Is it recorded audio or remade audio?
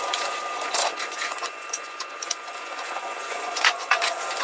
remade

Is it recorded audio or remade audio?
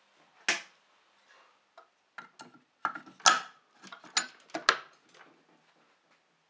recorded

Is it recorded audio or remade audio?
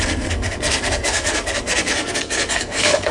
remade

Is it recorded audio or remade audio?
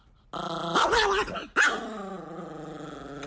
recorded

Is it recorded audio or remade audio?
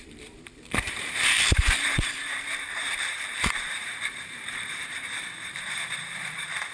remade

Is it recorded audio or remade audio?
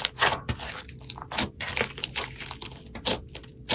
recorded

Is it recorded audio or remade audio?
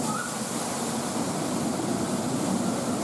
recorded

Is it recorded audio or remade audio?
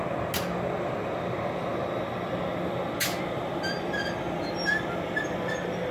recorded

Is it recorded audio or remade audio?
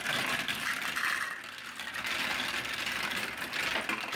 recorded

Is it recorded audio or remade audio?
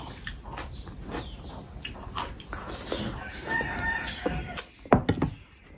recorded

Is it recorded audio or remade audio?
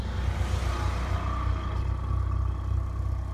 recorded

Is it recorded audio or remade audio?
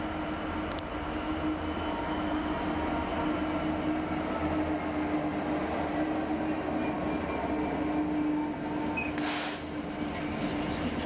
recorded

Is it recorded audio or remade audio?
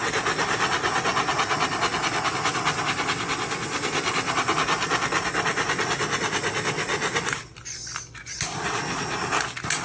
recorded